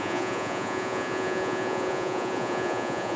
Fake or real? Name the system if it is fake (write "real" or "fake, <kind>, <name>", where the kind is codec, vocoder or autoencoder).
fake, vocoder, Vocos